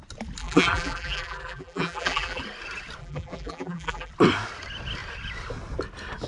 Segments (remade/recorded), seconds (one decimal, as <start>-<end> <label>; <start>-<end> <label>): 0.0-0.4 recorded; 0.4-2.4 remade; 2.4-3.0 recorded; 3.0-4.1 remade; 4.1-6.3 recorded